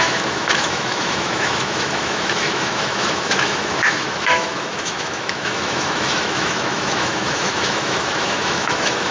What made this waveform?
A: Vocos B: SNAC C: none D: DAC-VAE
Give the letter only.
D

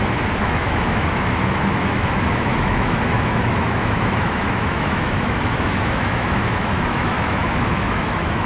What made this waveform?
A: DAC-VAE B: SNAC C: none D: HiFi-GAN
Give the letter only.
A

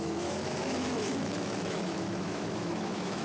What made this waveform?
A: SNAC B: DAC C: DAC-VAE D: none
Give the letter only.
C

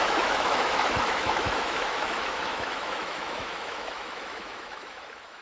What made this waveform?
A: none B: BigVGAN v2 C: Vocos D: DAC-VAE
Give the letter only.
D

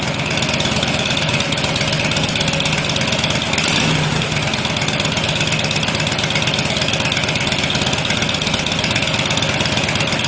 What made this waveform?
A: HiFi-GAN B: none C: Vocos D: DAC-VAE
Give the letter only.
B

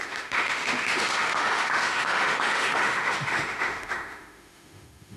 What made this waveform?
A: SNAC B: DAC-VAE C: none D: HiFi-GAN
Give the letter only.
B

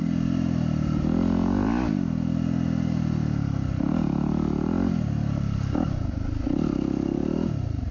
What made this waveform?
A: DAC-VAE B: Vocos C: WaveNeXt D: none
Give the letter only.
D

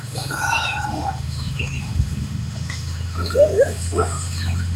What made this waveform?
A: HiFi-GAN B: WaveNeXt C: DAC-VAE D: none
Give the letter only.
C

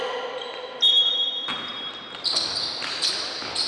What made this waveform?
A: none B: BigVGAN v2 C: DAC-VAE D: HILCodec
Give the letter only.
A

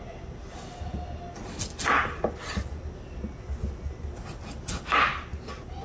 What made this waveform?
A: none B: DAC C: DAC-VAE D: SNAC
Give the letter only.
A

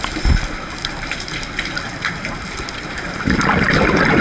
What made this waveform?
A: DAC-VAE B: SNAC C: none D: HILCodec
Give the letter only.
C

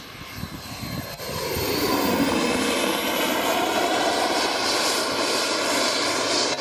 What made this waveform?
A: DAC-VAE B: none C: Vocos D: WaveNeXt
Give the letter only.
B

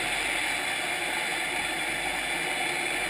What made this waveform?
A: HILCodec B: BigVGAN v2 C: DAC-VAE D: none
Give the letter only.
D